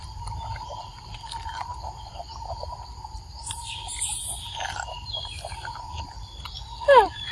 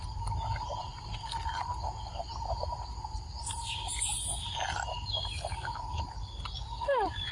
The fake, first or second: first